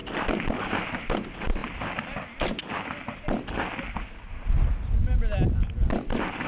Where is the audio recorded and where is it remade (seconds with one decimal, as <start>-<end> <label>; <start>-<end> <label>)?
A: 0.0-6.5 recorded